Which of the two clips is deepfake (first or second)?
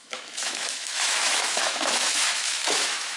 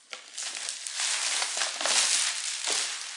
first